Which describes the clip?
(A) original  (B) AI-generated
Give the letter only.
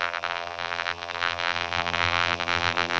B